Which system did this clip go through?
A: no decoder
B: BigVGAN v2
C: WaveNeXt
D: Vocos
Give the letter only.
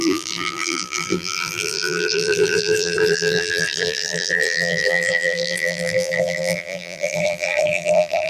B